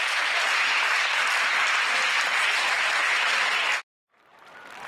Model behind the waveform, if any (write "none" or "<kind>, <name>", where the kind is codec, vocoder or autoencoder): none